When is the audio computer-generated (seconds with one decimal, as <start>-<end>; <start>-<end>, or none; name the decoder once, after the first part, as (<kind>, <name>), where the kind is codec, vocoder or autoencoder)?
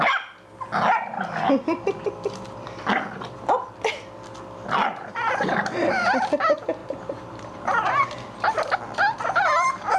4.9-6.2 (vocoder, BigVGAN v2); 6.8-8.7